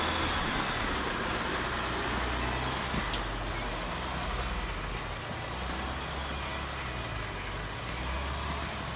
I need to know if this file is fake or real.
real